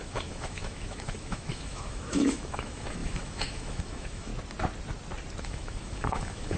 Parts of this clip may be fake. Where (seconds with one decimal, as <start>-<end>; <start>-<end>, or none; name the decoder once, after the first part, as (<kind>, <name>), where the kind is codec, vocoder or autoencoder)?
0.0-4.3 (autoencoder, DAC-VAE); 5.4-6.6